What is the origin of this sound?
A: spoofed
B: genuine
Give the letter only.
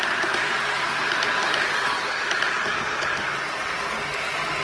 B